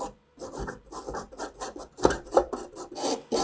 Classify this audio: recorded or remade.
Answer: remade